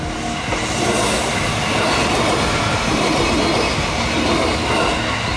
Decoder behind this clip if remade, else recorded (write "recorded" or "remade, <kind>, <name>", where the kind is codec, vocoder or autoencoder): recorded